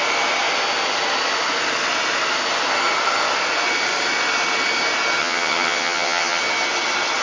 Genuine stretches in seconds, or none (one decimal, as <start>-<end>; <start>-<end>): 0.0-5.2; 6.4-7.2